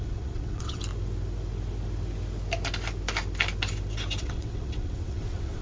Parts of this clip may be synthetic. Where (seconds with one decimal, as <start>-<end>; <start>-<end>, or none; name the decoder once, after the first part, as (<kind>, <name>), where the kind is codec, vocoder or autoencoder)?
0.0-0.8 (vocoder, WaveNeXt); 4.2-5.6